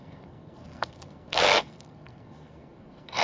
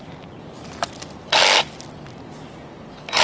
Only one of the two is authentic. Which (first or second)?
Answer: second